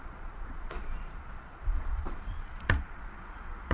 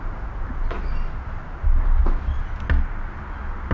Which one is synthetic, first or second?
first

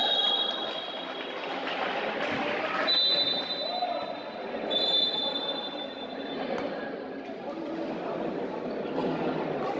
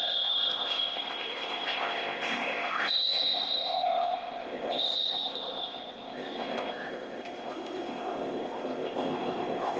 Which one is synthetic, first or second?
second